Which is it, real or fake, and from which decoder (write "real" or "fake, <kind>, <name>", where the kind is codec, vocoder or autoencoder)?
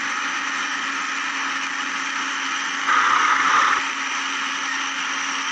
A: real